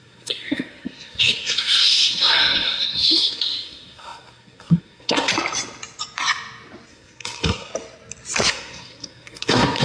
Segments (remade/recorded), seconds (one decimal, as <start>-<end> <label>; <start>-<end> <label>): 0.0-5.3 remade; 5.3-6.9 recorded; 6.9-7.7 remade; 7.7-8.5 recorded; 8.5-9.8 remade